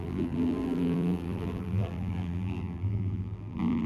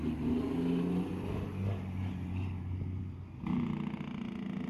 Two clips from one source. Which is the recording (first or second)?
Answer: second